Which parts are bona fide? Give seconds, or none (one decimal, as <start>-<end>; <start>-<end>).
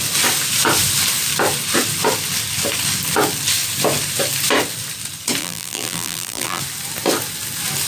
0.0-5.4; 6.6-7.9